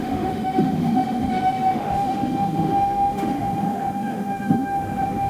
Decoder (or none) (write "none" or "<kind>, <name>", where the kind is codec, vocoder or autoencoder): autoencoder, DAC-VAE